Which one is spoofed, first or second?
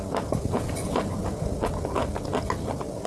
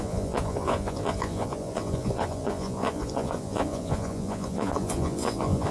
second